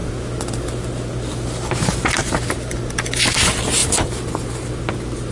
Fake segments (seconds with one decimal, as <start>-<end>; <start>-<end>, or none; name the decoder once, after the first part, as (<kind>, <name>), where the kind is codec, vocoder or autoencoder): 3.8-4.8 (vocoder, BigVGAN v2)